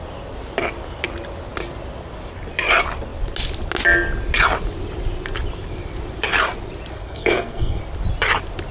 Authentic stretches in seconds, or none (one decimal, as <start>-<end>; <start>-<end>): 0.0-6.9; 7.8-8.7